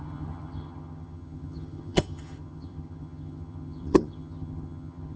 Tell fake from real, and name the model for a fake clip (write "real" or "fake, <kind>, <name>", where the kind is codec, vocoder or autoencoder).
fake, vocoder, HiFi-GAN